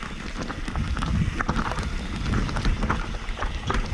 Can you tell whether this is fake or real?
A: real